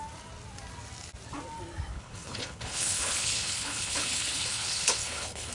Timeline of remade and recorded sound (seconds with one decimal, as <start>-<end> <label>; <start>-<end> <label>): 0.0-1.9 recorded; 1.9-5.5 remade